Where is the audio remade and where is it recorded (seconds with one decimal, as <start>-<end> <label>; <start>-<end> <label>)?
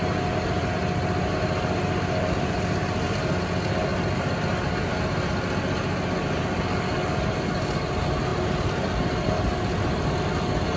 0.0-8.3 recorded; 8.3-10.3 remade; 10.3-10.8 recorded